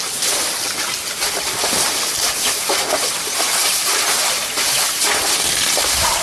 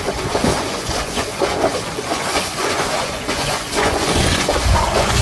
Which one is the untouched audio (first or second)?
first